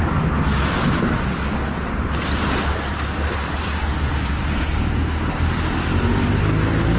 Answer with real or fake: real